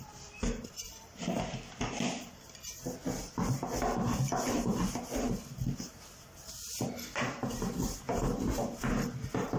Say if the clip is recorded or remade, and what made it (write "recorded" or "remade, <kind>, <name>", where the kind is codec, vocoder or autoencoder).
recorded